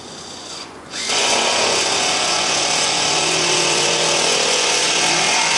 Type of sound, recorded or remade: remade